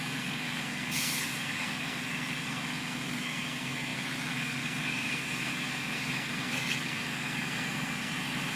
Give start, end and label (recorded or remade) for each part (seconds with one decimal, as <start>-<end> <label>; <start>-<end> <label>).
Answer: 0.0-8.5 remade